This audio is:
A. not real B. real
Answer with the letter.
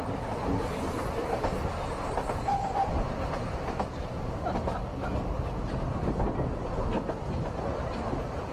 B